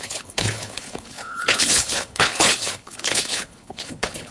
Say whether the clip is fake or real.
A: fake